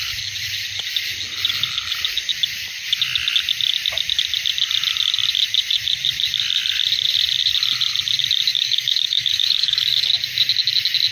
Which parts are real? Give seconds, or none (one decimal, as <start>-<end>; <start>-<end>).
0.0-8.5; 10.0-11.1

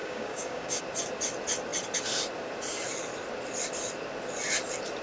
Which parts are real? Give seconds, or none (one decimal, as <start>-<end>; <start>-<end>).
0.8-5.0

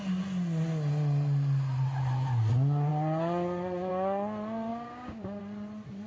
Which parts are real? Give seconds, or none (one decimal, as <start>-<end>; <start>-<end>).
0.0-4.7; 5.4-6.1

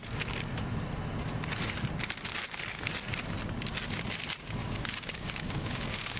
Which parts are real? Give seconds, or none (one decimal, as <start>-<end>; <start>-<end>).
0.0-4.6

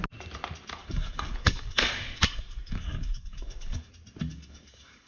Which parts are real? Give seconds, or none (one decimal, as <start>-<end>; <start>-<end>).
0.0-0.8; 3.9-4.3

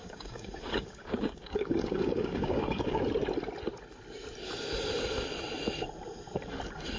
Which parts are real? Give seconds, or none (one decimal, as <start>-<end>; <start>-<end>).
3.0-7.0